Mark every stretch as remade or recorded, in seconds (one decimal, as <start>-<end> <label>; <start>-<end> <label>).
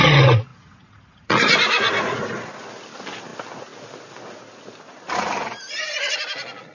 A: 0.0-0.5 recorded; 0.5-2.5 remade; 2.5-6.7 recorded